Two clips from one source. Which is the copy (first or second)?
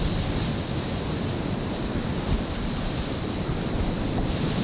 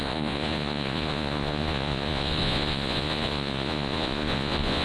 second